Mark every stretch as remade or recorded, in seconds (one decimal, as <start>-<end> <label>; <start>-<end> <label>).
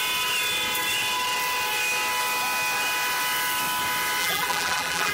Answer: 0.0-4.2 recorded; 4.2-5.1 remade